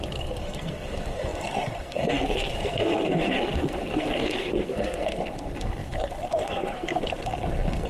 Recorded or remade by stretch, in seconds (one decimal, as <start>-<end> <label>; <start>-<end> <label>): 0.0-7.9 remade